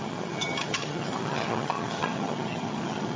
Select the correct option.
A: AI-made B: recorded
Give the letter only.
A